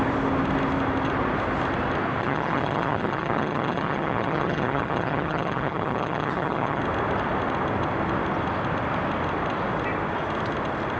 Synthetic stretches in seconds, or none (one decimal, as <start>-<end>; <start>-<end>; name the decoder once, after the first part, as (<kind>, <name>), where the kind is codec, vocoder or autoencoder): 2.2-6.8 (vocoder, HiFi-GAN)